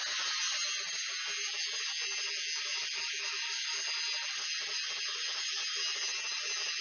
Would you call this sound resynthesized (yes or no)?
no